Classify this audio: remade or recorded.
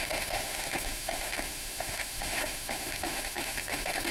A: remade